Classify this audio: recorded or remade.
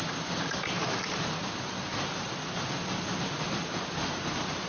remade